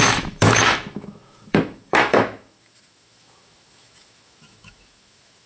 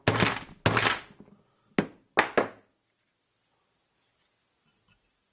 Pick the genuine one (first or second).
second